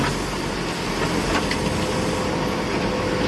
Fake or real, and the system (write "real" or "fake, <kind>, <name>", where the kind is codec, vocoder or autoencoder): real